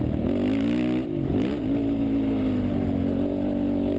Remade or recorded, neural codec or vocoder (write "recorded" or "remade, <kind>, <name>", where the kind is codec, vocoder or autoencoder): recorded